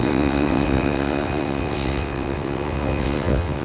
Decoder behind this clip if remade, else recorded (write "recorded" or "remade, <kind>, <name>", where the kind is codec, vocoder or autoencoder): remade, vocoder, WaveNeXt